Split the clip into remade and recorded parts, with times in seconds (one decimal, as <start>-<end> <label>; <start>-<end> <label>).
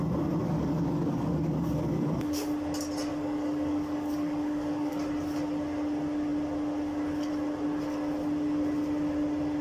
0.0-0.4 recorded; 0.4-2.5 remade; 2.5-3.1 recorded; 3.1-4.9 remade; 4.9-9.6 recorded